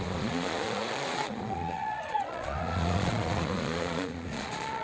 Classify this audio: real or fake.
fake